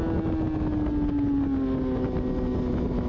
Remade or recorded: recorded